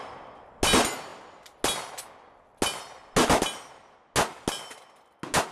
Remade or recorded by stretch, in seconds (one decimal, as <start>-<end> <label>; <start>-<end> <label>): 0.0-5.5 recorded